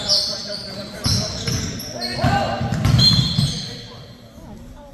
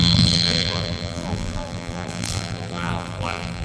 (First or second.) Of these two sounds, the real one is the first